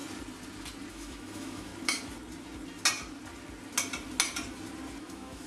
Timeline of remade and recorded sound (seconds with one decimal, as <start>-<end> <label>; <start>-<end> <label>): 0.0-0.9 recorded; 0.9-1.7 remade; 1.7-5.0 recorded; 5.0-5.5 remade